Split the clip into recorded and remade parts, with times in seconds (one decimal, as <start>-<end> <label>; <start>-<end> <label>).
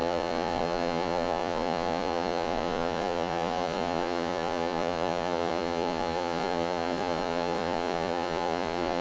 0.0-9.0 remade